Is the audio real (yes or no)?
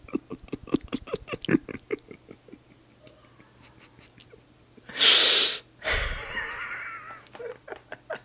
yes